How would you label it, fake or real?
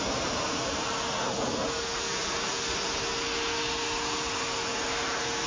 real